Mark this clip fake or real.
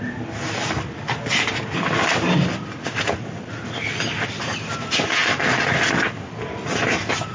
real